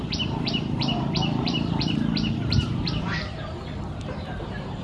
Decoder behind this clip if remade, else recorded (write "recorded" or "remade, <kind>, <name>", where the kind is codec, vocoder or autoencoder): remade, vocoder, BigVGAN v2